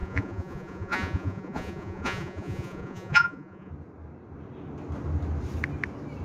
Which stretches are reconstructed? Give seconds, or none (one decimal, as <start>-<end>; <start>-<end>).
0.0-3.7